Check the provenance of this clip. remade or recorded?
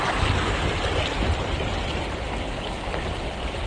recorded